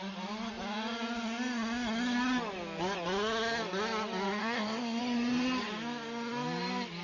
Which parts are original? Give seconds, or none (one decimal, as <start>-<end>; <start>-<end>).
0.0-4.4; 5.0-7.0